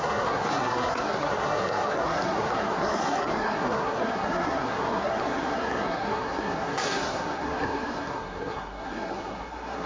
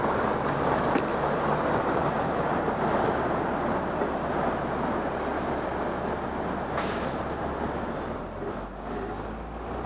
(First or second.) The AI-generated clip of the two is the first